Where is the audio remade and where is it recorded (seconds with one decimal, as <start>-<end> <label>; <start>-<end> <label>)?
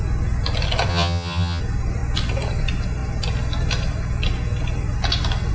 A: 0.0-0.9 recorded; 0.9-1.6 remade; 1.6-5.5 recorded